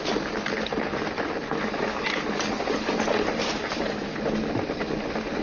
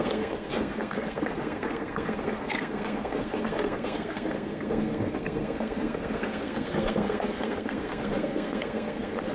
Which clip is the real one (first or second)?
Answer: first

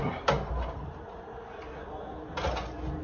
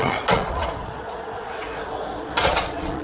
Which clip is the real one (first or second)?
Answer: first